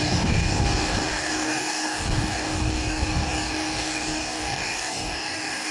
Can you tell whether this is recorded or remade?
remade